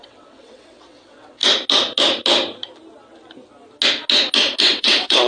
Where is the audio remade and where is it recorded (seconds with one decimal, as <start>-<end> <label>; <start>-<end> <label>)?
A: 0.0-1.4 remade; 1.4-4.6 recorded; 4.6-5.3 remade